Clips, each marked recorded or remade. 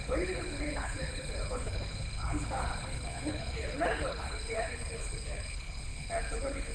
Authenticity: remade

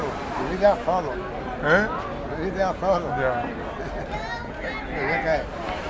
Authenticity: recorded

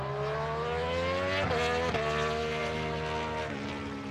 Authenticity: recorded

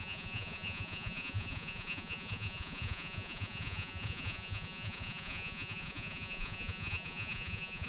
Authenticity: remade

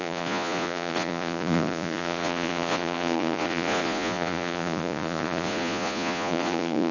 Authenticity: remade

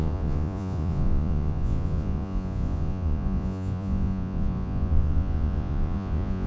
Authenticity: remade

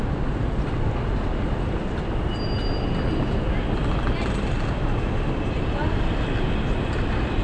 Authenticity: recorded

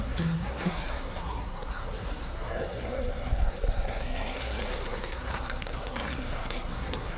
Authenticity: remade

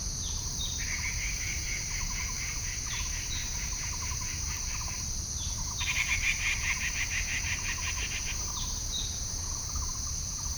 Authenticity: remade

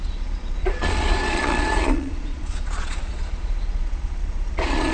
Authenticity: remade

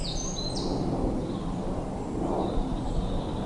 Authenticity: recorded